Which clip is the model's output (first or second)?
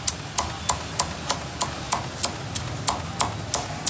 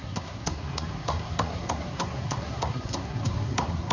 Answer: second